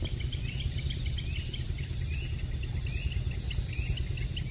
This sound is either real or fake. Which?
real